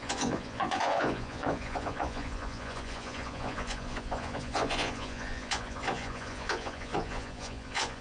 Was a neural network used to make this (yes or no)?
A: yes